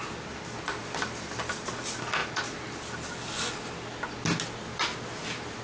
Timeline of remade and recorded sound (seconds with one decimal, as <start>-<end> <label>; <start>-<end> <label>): 0.0-0.8 recorded; 0.8-1.7 remade; 1.7-5.6 recorded